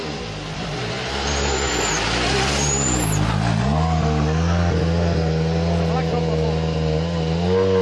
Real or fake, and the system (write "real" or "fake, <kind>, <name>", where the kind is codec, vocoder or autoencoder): real